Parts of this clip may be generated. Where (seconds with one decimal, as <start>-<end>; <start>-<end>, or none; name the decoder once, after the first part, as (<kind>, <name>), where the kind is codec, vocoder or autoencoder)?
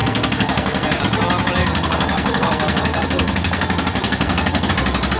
0.0-1.0 (codec, SNAC); 1.6-4.7